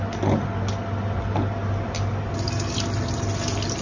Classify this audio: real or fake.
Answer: real